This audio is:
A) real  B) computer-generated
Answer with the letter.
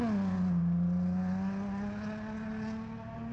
A